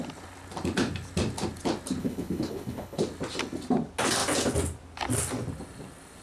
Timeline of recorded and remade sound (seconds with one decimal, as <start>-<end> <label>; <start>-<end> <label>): 0.0-2.0 recorded; 2.0-3.0 remade; 3.0-6.2 recorded